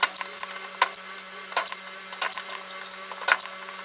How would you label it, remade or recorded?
recorded